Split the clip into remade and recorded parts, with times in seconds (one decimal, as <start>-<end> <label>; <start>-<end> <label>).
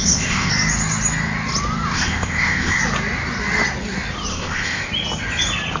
0.0-0.5 remade; 0.5-1.9 recorded; 1.9-2.8 remade; 2.8-4.3 recorded; 4.3-4.9 remade; 4.9-5.8 recorded